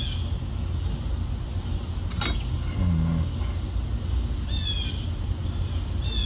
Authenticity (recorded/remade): recorded